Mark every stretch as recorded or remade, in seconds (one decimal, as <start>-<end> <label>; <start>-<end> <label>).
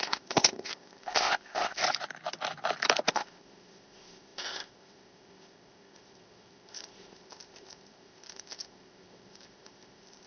0.0-1.8 remade; 1.8-3.1 recorded; 3.1-10.3 remade